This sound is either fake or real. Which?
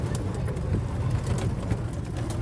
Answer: real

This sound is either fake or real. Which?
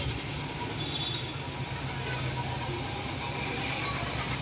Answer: real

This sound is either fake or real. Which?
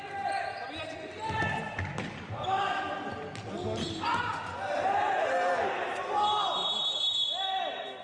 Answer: real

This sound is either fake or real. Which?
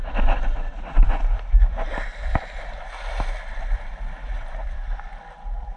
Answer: real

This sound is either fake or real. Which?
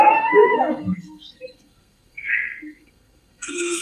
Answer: fake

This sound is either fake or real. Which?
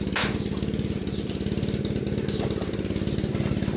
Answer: real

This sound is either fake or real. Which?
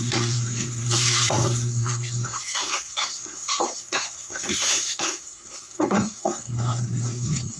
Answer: fake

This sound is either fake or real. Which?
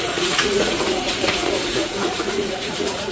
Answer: fake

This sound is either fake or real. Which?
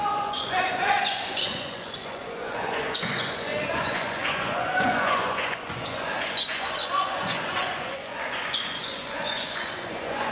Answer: fake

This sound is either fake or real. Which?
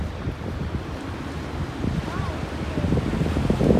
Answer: real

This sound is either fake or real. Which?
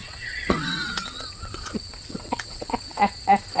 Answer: fake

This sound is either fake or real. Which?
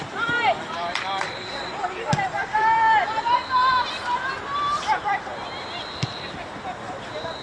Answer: fake